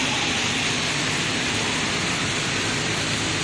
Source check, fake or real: real